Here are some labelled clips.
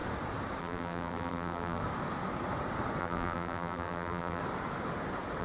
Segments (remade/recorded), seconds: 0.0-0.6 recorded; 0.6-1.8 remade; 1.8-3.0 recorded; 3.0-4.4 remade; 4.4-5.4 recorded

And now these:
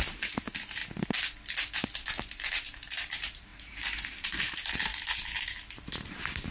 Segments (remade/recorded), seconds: 0.0-0.8 remade; 0.8-2.3 recorded; 2.3-4.9 remade; 4.9-5.4 recorded; 5.4-6.5 remade

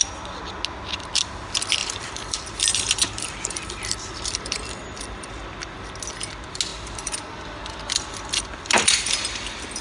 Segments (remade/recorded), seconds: 0.0-1.8 recorded; 1.8-5.3 remade; 5.3-6.7 recorded; 6.7-9.8 remade

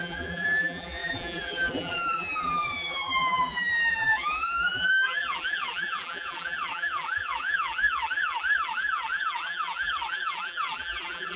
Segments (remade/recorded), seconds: 0.0-11.4 remade

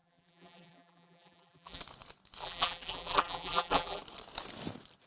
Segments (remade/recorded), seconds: 0.0-1.8 remade; 1.8-2.4 recorded; 2.4-4.0 remade; 4.0-5.1 recorded